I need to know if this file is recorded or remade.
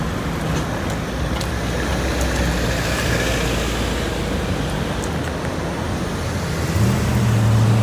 recorded